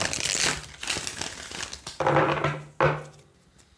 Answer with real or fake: real